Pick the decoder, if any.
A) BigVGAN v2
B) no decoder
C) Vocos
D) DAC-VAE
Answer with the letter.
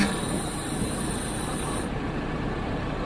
A